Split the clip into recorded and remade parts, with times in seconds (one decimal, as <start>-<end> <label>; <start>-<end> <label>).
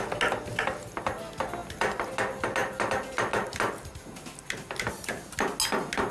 0.0-6.1 recorded